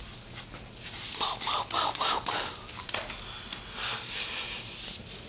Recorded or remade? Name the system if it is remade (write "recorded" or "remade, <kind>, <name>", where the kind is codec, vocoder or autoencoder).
recorded